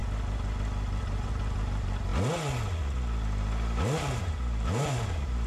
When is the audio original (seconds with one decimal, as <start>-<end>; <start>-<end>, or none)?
0.0-1.0; 2.1-4.2